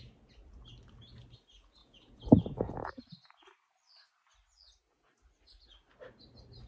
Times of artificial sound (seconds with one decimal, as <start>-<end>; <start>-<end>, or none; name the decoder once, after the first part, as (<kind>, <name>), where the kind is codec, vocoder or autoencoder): 1.8-2.9 (vocoder, Vocos)